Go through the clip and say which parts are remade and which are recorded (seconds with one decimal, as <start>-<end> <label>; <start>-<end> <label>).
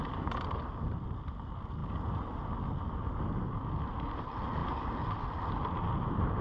0.0-6.4 recorded